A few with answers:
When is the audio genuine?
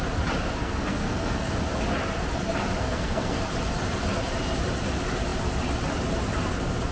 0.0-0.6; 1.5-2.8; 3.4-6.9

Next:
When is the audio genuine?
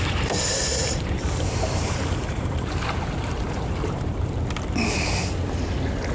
0.0-0.6; 4.3-6.1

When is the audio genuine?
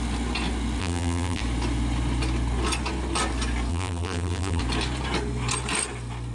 0.0-0.8; 1.4-3.7; 4.6-6.3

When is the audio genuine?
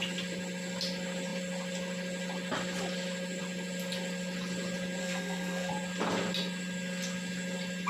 0.0-5.0; 5.7-7.9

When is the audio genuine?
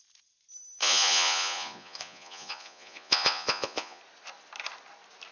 0.0-0.8; 4.0-5.3